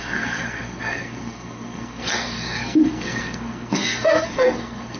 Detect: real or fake fake